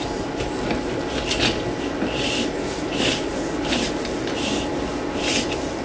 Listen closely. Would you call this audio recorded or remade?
recorded